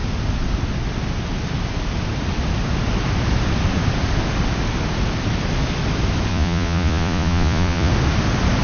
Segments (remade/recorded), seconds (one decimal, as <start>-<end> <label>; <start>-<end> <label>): 0.0-6.3 recorded; 6.3-7.9 remade; 7.9-8.6 recorded